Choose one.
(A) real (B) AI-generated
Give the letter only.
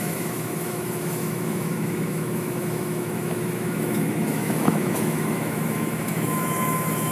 B